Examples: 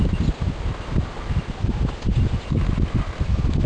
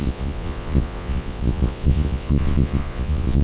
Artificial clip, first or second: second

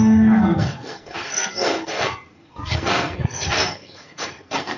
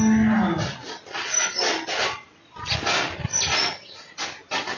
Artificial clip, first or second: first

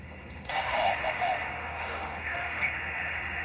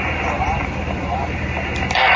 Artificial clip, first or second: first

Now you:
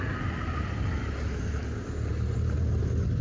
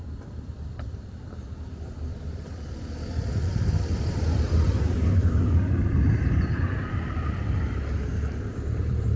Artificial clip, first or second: second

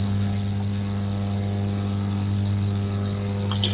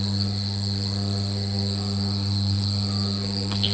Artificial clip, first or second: second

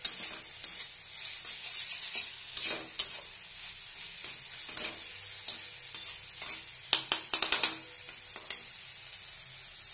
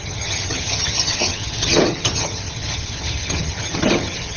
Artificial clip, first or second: second